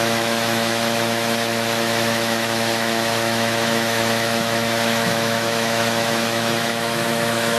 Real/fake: fake